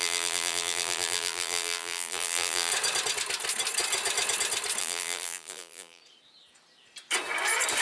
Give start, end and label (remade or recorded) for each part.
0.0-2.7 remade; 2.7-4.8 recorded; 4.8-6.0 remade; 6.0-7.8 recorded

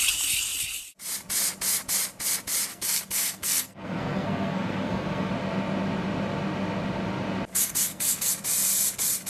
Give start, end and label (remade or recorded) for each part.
0.0-2.7 recorded; 2.7-5.3 remade; 5.3-7.5 recorded; 7.5-8.3 remade; 8.3-9.3 recorded

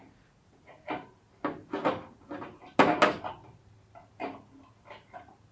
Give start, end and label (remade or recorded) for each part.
0.0-5.5 recorded

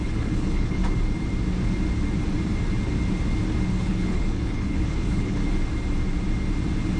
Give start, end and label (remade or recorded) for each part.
0.0-0.8 remade; 0.8-3.7 recorded; 3.7-5.4 remade; 5.4-7.0 recorded

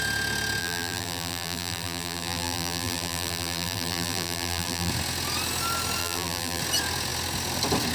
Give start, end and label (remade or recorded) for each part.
0.0-0.6 recorded; 0.6-4.9 remade; 4.9-6.0 recorded; 6.0-6.6 remade; 6.6-7.9 recorded

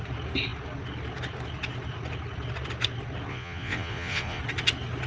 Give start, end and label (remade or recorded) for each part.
0.0-3.3 recorded; 3.3-4.4 remade; 4.4-5.1 recorded

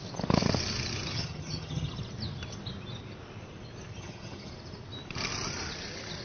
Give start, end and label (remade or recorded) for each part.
0.0-1.1 recorded; 1.1-2.0 remade; 2.0-3.9 recorded; 3.9-4.5 remade; 4.5-6.2 recorded

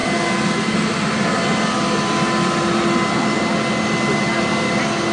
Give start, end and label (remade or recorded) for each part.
0.0-5.1 recorded